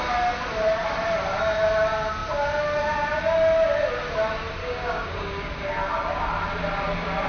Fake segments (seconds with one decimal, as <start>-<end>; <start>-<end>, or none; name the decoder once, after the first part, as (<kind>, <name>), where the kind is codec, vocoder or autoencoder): 4.6-5.7 (codec, DAC)